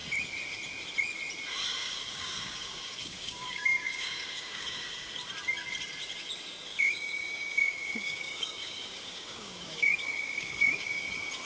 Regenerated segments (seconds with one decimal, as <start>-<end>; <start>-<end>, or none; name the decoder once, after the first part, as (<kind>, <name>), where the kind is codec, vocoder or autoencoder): 1.8-5.1 (codec, DAC); 6.7-11.0